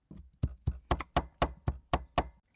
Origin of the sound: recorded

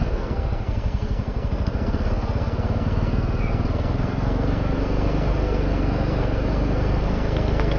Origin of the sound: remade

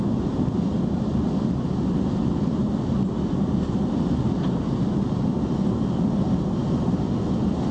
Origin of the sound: recorded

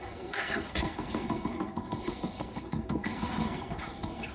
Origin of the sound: remade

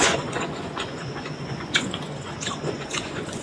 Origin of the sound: remade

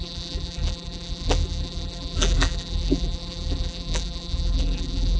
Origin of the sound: remade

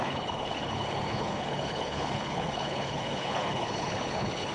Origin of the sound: remade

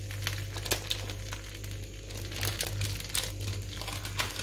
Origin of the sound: recorded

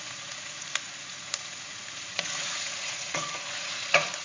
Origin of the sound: remade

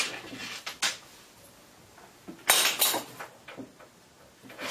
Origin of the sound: recorded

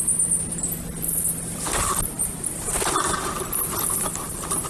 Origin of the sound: recorded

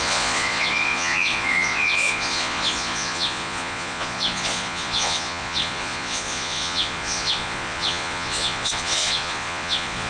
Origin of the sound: remade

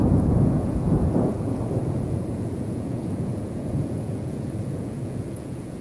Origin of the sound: remade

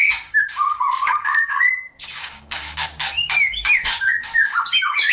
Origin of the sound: remade